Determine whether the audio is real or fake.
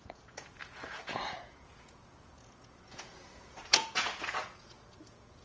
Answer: fake